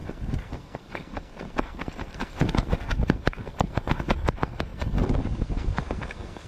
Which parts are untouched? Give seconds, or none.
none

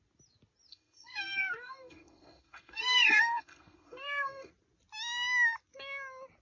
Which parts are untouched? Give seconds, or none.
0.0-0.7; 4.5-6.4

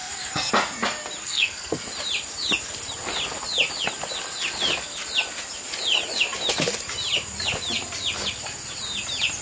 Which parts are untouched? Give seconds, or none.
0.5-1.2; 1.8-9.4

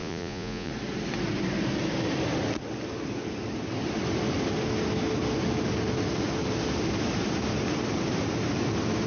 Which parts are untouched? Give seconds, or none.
0.7-9.1

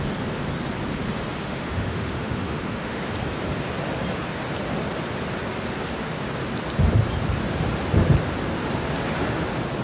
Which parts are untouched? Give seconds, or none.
0.0-1.4; 3.0-9.8

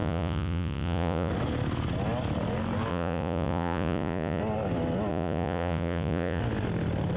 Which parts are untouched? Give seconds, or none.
1.3-2.9; 4.4-5.1; 6.4-7.2

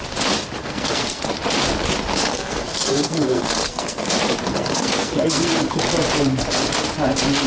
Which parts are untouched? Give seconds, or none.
0.0-0.6; 1.2-2.3; 4.1-4.5; 5.5-7.5

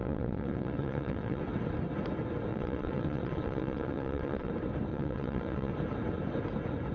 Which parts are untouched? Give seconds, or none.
1.4-2.5; 4.5-4.9; 5.7-6.9